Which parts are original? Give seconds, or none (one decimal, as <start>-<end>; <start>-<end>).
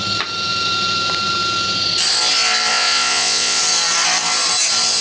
0.0-2.7; 3.6-5.0